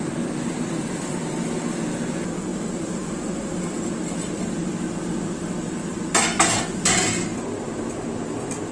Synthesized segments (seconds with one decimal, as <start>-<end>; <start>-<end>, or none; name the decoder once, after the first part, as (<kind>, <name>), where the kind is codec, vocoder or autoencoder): 2.5-3.8 (vocoder, BigVGAN v2)